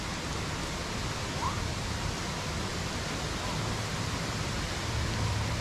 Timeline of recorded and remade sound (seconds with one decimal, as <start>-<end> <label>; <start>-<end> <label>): 0.0-0.6 recorded; 0.6-1.6 remade; 1.6-5.6 recorded